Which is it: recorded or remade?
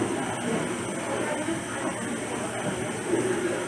recorded